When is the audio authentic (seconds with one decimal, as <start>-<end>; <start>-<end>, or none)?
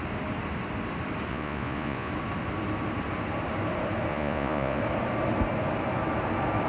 0.0-1.3; 2.1-4.1; 4.8-6.7